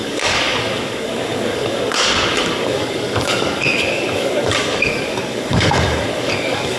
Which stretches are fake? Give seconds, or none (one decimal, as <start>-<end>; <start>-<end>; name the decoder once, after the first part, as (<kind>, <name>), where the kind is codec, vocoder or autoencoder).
0.0-6.8 (codec, DAC)